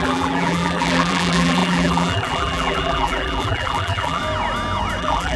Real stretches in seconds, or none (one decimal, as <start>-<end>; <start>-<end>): 4.2-5.0